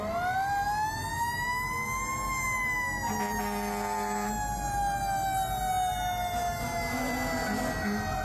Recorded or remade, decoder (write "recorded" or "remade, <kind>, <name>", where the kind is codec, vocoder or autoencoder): recorded